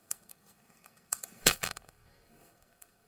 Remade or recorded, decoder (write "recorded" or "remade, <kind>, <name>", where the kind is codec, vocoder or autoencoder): remade, codec, SNAC